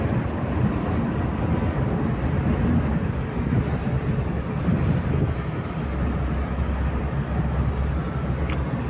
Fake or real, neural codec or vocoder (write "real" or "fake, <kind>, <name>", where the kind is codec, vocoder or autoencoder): real